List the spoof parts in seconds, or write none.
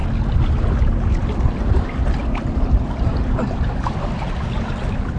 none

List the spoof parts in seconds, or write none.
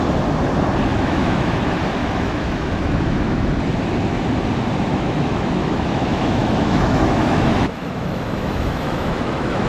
0.9-1.6 (autoencoder, DAC-VAE); 2.0-3.5; 4.9-9.7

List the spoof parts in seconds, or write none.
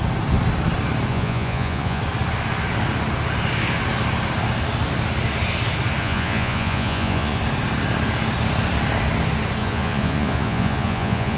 1.1-2.0 (vocoder, Vocos); 6.0-7.4; 9.6-11.4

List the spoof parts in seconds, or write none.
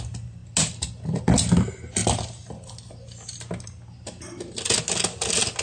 none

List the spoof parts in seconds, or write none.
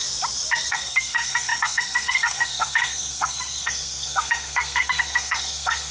0.7-5.9 (codec, SNAC)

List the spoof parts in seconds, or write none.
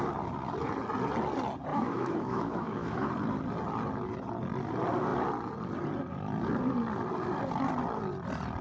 1.7-3.1 (autoencoder, DAC-VAE)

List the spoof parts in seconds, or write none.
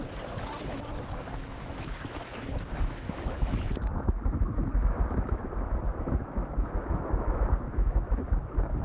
0.6-8.8 (autoencoder, DAC-VAE)